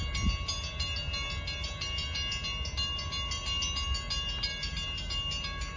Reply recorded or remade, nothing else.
recorded